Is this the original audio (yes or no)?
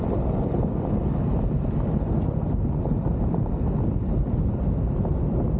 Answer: yes